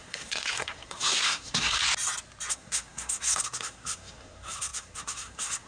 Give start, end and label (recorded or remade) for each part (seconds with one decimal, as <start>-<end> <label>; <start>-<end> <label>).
0.0-1.8 remade; 1.8-2.5 recorded; 2.5-5.7 remade